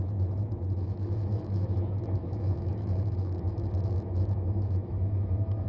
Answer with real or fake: fake